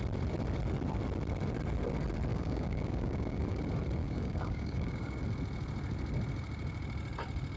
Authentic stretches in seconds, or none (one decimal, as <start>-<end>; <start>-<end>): 0.0-2.3; 3.6-4.0; 5.2-7.6